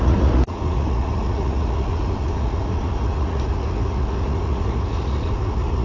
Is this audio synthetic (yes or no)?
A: yes